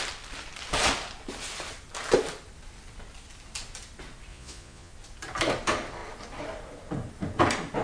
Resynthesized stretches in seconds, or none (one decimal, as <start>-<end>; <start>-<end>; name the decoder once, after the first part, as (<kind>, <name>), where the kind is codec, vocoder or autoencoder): 4.3-4.9 (vocoder, Vocos)